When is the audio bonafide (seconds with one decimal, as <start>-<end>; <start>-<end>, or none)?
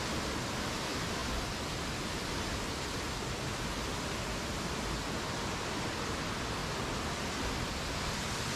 0.0-8.6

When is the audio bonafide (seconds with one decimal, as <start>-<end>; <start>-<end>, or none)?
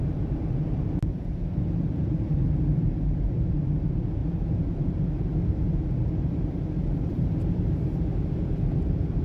0.0-0.6; 1.3-4.2; 5.0-9.2